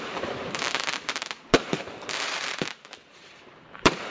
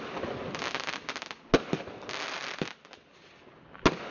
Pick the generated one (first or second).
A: first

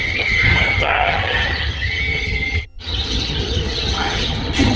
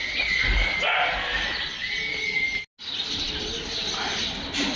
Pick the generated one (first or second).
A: first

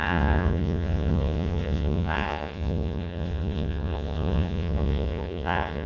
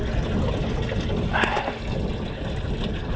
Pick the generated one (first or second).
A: first